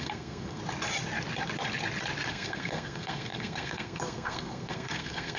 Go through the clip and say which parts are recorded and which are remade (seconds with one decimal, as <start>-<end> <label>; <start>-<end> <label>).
0.0-0.6 remade; 0.6-2.3 recorded; 2.3-5.4 remade